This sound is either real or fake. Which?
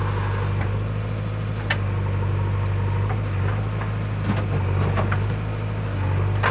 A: real